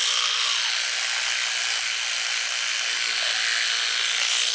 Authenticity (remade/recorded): recorded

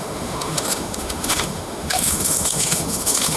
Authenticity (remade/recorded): remade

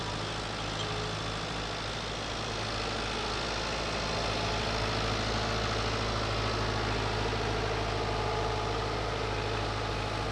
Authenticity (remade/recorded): recorded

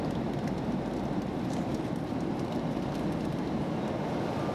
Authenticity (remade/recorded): recorded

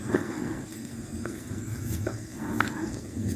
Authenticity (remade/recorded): remade